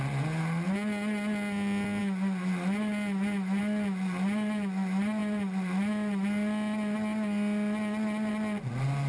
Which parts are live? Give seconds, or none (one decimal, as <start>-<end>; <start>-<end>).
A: 0.0-9.1